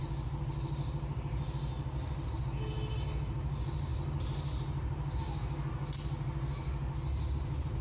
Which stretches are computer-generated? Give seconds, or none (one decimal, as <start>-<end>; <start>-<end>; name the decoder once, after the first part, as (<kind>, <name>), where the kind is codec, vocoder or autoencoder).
none